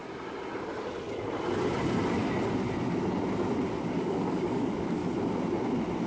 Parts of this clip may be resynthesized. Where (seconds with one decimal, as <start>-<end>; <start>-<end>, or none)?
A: 3.7-5.0